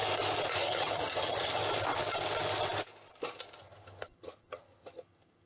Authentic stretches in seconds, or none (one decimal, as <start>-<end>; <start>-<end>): 0.0-0.6; 1.6-3.6

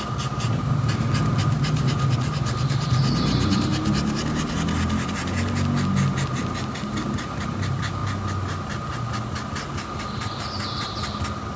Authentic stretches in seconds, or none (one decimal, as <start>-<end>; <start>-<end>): 0.0-11.6

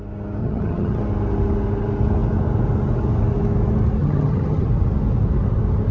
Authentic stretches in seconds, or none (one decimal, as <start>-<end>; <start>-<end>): 0.0-0.4; 1.0-4.0; 4.7-5.9

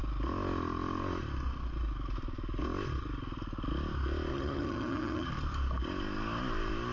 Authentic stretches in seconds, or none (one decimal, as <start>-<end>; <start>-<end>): 0.0-4.3; 5.3-6.9

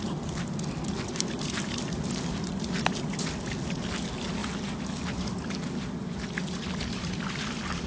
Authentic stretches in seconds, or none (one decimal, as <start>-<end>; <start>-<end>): 0.0-7.9

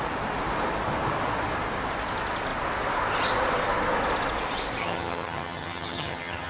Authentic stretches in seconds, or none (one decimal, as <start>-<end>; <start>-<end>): 0.0-4.8

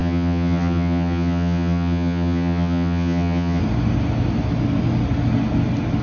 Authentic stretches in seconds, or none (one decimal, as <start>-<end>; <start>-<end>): 3.6-6.0